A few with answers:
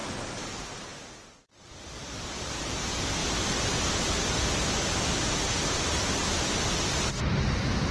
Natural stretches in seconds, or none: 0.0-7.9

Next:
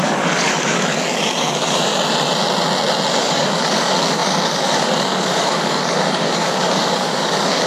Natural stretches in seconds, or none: 1.9-3.2

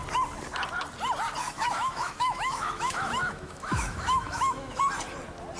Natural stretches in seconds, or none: 0.0-1.4; 4.8-5.6

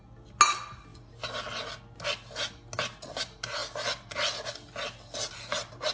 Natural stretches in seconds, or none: 0.0-5.9

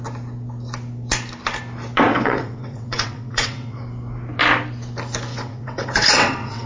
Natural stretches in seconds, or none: 0.0-2.1; 3.8-5.3

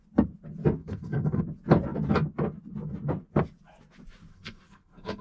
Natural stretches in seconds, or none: 0.0-0.8; 1.4-4.3

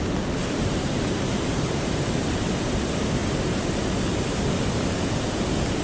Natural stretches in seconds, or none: 0.0-0.4; 2.1-5.8